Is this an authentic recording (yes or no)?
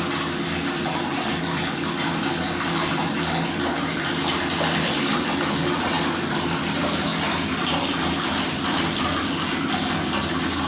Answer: yes